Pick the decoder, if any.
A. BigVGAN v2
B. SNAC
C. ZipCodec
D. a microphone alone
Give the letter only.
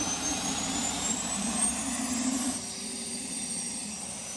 A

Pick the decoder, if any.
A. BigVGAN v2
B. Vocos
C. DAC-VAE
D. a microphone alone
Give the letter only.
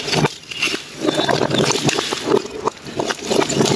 A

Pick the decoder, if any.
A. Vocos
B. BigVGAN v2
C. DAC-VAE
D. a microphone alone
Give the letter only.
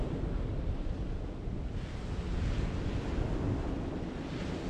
D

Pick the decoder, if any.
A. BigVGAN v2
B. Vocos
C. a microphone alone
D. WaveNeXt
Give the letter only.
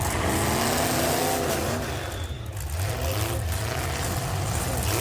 C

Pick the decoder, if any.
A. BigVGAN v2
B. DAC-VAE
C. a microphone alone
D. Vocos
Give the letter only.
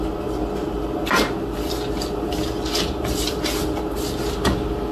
C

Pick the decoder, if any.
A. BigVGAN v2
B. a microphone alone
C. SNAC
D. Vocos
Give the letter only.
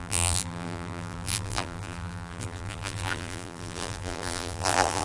A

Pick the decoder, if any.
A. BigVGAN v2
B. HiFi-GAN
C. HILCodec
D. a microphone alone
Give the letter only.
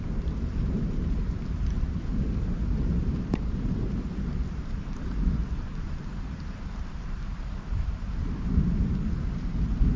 A